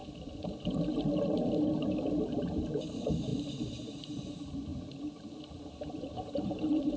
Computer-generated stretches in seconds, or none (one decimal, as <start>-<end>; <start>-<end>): 2.2-4.7; 5.6-7.0